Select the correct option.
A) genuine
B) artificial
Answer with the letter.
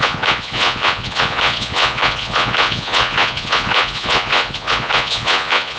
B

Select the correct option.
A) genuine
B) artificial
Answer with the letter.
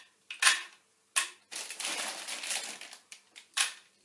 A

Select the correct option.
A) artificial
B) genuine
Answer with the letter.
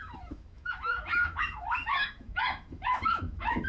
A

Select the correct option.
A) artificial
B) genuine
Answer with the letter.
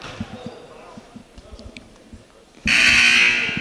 B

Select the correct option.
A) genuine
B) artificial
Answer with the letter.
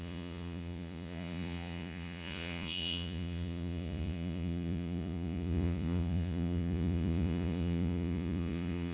B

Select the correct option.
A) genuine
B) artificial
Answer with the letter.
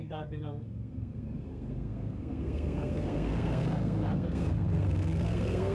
B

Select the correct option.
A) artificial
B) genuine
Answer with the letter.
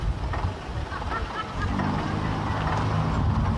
B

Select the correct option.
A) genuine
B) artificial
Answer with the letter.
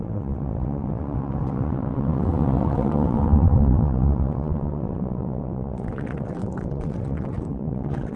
B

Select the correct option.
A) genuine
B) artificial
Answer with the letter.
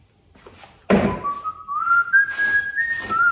A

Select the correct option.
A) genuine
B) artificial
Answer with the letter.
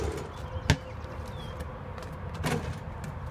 A